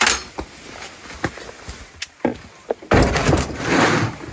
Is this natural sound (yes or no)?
yes